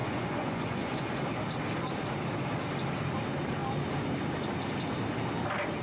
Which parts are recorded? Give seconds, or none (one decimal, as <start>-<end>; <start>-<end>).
1.2-5.8